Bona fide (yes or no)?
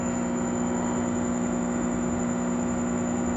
yes